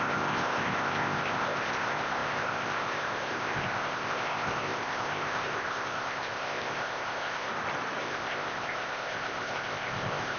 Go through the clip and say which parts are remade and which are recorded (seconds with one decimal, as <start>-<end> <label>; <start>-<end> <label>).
0.0-7.5 remade; 7.5-8.0 recorded; 8.0-10.4 remade